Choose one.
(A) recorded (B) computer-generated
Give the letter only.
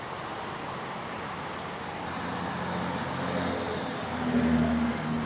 A